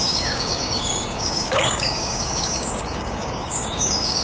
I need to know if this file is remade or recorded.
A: remade